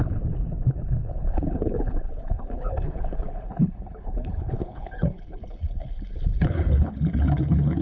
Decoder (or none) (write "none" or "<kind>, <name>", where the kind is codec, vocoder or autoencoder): codec, HILCodec